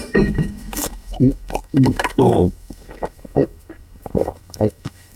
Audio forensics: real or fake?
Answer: fake